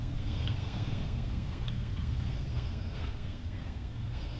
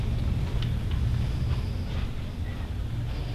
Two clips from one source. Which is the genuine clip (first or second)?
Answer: second